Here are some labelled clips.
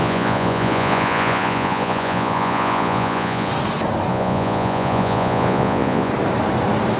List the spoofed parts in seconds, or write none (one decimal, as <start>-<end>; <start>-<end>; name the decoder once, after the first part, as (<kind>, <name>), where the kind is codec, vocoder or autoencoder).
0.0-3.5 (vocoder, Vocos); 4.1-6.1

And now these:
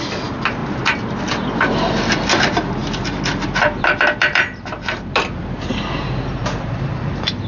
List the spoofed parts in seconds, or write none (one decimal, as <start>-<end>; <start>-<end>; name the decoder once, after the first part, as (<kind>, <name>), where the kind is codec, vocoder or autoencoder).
none

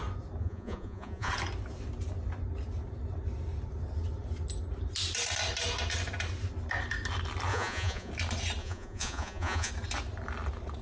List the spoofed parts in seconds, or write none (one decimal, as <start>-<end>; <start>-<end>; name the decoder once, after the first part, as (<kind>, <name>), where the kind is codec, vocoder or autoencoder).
0.4-1.3 (vocoder, Vocos); 7.5-8.1; 8.6-9.7